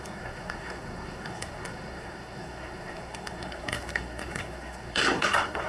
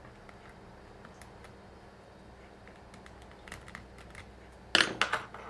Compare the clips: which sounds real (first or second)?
second